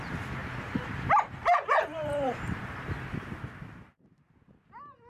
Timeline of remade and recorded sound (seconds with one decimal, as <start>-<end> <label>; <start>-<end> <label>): 0.0-0.4 recorded; 0.4-0.9 remade; 0.9-1.4 recorded; 1.4-4.1 remade; 4.1-5.1 recorded

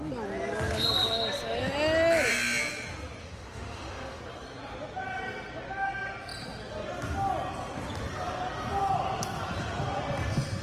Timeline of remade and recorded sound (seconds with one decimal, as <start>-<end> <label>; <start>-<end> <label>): 0.0-3.2 recorded; 3.2-4.2 remade; 4.2-10.6 recorded

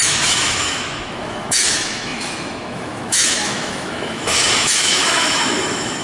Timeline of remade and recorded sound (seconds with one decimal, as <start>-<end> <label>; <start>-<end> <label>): 0.0-6.0 remade

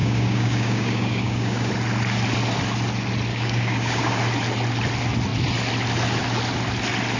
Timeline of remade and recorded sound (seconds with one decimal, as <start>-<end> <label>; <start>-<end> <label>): 0.0-1.7 remade; 1.7-3.3 recorded; 3.3-4.2 remade; 4.2-7.2 recorded